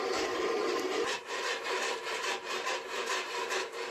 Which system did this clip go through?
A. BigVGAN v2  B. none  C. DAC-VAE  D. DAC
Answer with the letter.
A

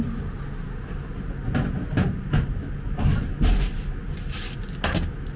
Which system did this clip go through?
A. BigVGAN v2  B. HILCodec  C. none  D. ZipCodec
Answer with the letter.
C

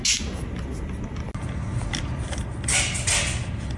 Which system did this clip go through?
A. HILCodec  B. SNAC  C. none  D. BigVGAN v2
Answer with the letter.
C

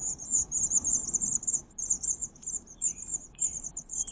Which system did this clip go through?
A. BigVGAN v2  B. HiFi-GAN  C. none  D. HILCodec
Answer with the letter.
A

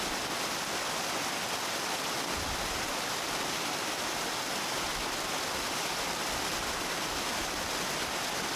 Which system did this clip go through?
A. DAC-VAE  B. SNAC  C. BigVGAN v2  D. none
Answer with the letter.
D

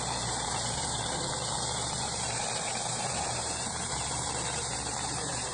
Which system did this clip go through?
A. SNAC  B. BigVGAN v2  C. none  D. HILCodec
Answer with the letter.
B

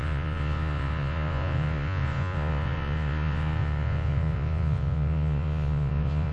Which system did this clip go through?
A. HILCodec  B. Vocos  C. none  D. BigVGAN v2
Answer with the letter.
B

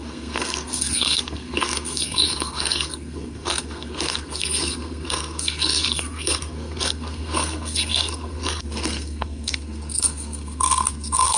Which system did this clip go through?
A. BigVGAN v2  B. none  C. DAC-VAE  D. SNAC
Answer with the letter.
D